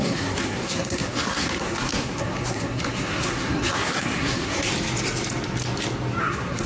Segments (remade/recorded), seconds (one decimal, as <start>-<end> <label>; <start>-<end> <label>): 0.0-4.7 remade; 4.7-6.2 recorded; 6.2-6.7 remade